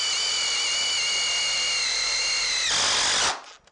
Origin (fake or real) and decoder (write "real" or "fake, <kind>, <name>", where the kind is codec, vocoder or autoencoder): real